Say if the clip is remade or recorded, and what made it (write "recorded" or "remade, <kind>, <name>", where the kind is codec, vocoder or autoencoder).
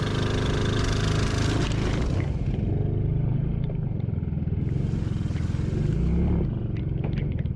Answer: recorded